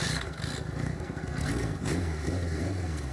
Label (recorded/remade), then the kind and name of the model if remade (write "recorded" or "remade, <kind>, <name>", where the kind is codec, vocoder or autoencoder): remade, codec, SNAC